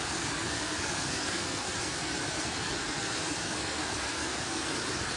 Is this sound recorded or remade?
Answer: remade